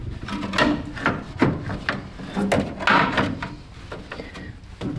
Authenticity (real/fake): real